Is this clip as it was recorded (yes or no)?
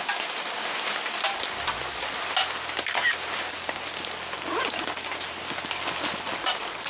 yes